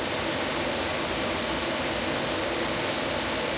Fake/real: real